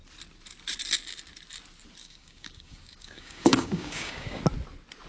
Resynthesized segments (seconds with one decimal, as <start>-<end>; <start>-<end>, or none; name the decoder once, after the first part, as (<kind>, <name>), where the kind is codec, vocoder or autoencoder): 2.0-4.4 (codec, DAC)